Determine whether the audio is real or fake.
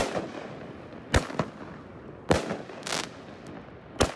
real